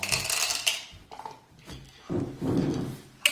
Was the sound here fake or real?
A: real